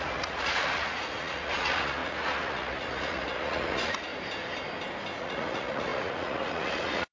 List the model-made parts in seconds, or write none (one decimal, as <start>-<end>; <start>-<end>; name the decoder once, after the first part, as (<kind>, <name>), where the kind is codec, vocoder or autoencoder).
0.0-4.1 (vocoder, Vocos); 5.2-7.1